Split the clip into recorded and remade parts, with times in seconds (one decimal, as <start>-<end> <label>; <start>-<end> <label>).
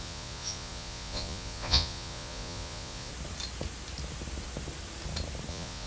0.0-3.1 remade; 3.1-5.5 recorded; 5.5-5.9 remade